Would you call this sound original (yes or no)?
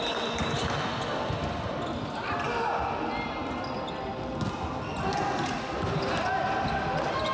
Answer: yes